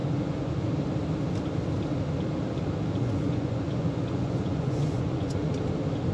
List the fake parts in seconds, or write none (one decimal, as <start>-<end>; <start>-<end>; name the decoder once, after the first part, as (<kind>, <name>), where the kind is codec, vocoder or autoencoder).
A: 0.0-0.7 (vocoder, Vocos); 3.0-5.5